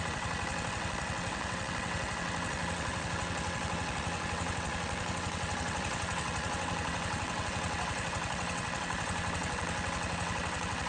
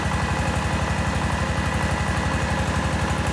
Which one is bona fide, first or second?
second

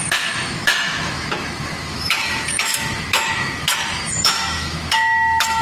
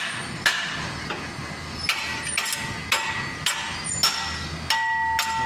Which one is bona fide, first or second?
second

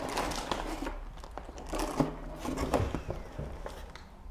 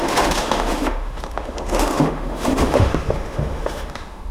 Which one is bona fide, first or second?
first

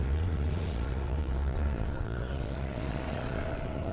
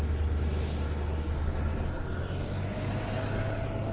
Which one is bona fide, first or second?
second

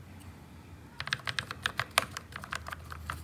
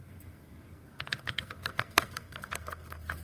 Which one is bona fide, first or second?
first